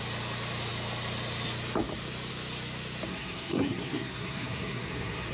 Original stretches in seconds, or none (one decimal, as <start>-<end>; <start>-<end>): 0.0-3.1

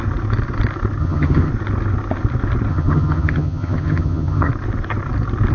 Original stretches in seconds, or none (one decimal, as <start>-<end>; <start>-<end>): 0.0-1.0; 1.5-2.7; 4.5-5.5